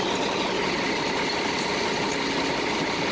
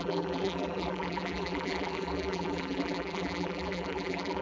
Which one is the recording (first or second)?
first